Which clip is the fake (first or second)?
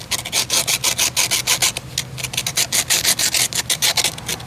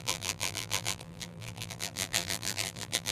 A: second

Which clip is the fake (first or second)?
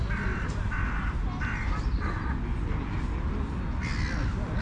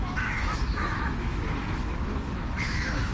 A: second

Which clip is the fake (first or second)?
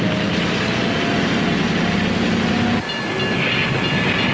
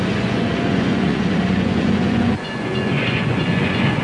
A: second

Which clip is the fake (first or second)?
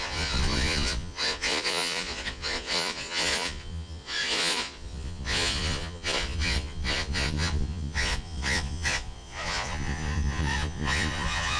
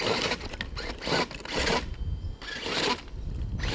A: first